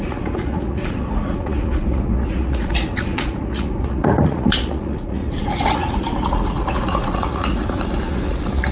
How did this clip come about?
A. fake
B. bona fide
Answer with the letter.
A